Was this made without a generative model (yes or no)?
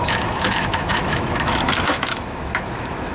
no